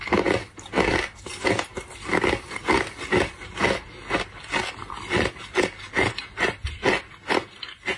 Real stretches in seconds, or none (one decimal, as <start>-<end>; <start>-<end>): 0.0-8.0